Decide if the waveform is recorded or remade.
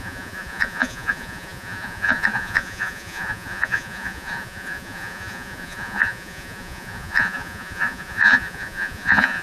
remade